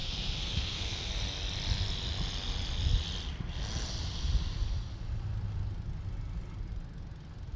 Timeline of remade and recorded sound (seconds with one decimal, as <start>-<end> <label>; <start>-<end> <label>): 0.0-1.1 remade; 1.1-7.6 recorded